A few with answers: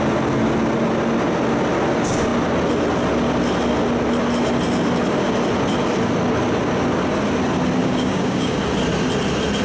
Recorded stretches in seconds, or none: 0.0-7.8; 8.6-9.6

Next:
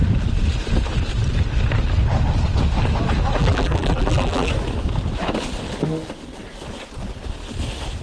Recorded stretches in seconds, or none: 0.0-3.4; 4.5-8.0

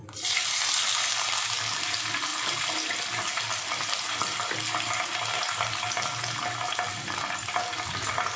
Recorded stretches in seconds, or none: 0.0-8.4

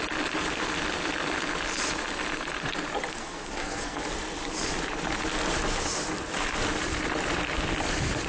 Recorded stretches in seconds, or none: 0.0-3.1; 4.0-8.3

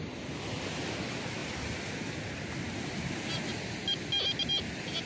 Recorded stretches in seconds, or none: 0.0-5.1